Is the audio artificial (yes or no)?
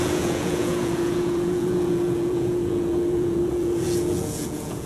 yes